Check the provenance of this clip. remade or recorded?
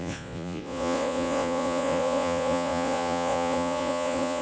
remade